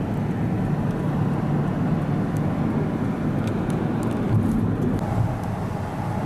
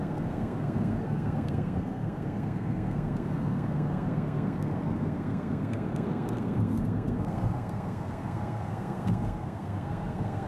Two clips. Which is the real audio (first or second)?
first